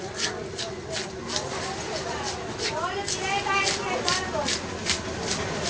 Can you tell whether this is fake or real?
real